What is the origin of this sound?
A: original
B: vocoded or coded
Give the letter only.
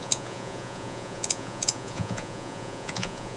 B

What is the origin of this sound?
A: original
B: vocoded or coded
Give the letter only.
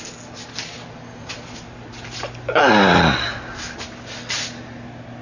A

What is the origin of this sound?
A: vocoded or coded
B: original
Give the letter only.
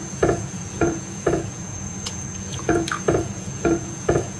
A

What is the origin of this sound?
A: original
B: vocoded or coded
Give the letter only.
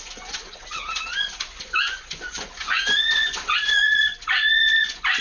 B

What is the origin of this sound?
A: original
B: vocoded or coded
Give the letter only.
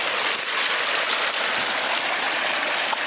A